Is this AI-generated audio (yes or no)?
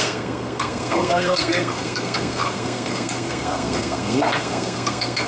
yes